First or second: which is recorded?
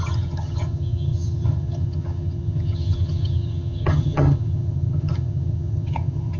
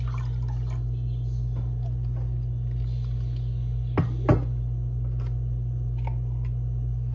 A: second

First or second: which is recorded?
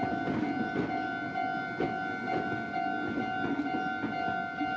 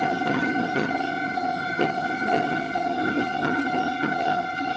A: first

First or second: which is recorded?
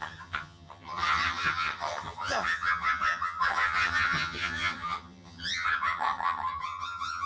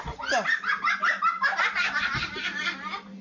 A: second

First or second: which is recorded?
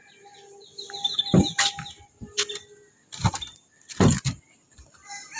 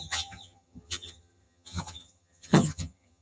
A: first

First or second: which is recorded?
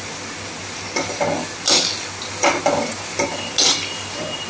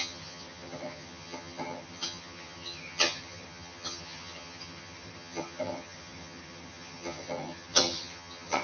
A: first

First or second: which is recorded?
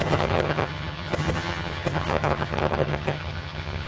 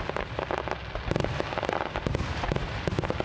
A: second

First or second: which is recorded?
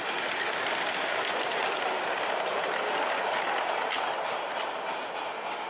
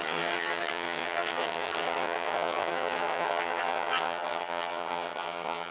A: first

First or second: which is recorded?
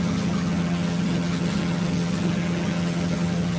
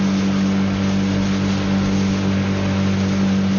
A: second